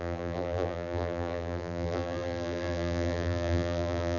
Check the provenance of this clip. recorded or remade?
remade